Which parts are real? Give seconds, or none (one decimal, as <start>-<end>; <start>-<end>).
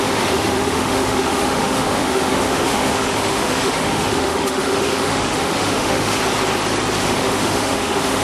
6.2-7.0